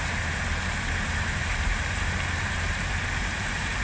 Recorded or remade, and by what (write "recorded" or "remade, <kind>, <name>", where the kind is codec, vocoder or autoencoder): remade, vocoder, BigVGAN v2